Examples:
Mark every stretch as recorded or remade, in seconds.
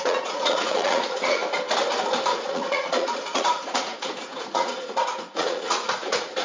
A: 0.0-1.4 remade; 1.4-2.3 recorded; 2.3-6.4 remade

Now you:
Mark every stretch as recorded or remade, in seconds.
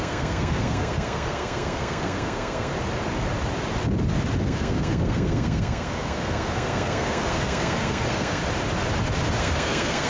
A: 0.0-2.7 remade; 2.7-4.4 recorded; 4.4-8.4 remade; 8.4-9.4 recorded; 9.4-10.1 remade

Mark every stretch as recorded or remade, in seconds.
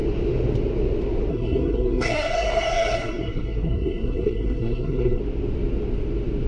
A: 0.0-1.3 recorded; 1.3-5.2 remade; 5.2-6.5 recorded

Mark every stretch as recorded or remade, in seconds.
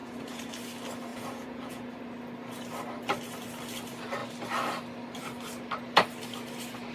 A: 0.0-0.5 remade; 0.5-1.1 recorded; 1.1-2.0 remade; 2.0-6.9 recorded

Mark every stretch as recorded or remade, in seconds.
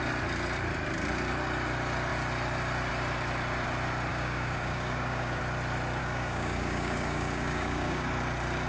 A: 0.0-4.1 recorded; 4.1-5.4 remade; 5.4-6.0 recorded; 6.0-8.1 remade; 8.1-8.7 recorded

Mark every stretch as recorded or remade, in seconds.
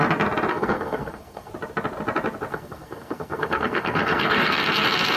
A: 0.0-0.5 recorded; 0.5-1.5 remade; 1.5-2.5 recorded; 2.5-4.6 remade; 4.6-5.2 recorded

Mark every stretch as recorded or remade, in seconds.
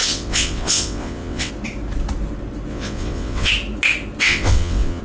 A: 0.0-1.5 remade; 1.5-2.7 recorded; 2.7-3.5 remade; 3.5-4.2 recorded; 4.2-5.0 remade